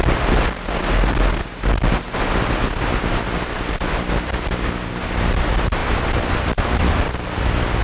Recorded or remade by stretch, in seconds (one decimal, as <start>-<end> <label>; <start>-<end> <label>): 0.0-7.8 recorded